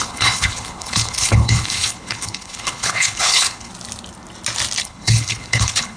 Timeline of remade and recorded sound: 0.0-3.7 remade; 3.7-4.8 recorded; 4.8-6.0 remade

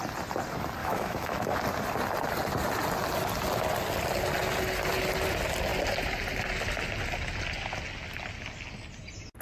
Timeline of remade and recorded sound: 0.0-0.8 recorded; 0.8-1.6 remade; 1.6-9.4 recorded

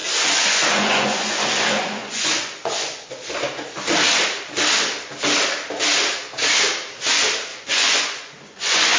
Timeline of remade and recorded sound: 0.0-3.1 remade; 3.1-7.5 recorded; 7.5-9.0 remade

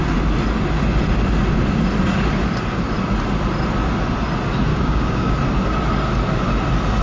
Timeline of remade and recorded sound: 0.0-4.7 recorded; 4.7-5.4 remade; 5.4-7.0 recorded

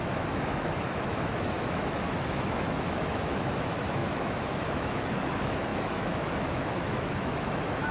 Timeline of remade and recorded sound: 0.0-7.9 remade

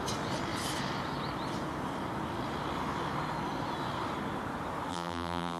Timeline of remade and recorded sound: 0.0-4.9 recorded; 4.9-5.6 remade

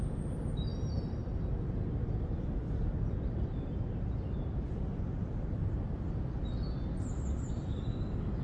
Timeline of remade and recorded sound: 0.0-8.4 recorded

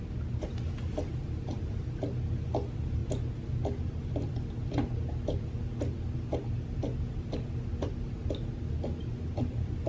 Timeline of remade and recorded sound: 0.0-9.9 recorded